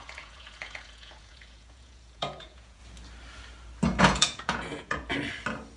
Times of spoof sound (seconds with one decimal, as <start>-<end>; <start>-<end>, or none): 0.0-2.8; 4.0-5.1

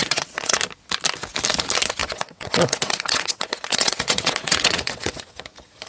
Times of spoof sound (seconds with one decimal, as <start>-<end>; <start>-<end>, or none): 0.0-0.6; 2.0-5.4